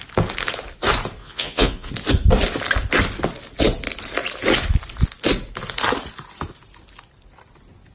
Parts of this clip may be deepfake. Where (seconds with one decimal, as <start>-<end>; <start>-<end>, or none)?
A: 1.2-1.9